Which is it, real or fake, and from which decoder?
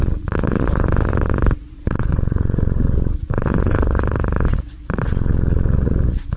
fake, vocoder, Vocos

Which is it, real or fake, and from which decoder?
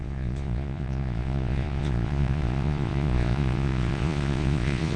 fake, vocoder, Vocos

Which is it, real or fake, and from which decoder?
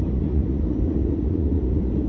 fake, vocoder, Vocos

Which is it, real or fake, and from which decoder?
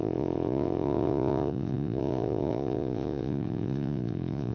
fake, vocoder, Vocos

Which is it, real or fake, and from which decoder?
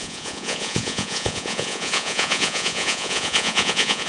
fake, vocoder, Vocos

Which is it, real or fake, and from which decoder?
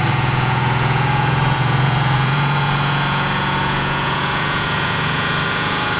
fake, vocoder, Vocos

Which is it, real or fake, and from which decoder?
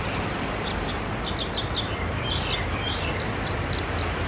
real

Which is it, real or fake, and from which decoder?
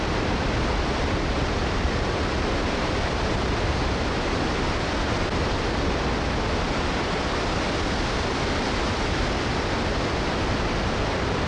real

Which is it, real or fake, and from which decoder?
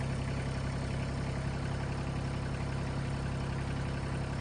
real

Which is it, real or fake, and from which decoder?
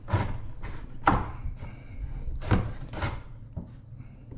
real